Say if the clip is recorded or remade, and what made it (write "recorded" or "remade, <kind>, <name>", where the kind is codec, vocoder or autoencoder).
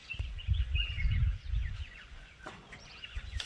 remade, vocoder, Vocos